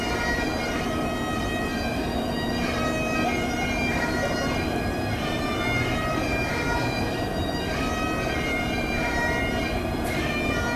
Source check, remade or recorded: remade